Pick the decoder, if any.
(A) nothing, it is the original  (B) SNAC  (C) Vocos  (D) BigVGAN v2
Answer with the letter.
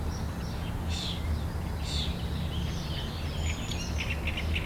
A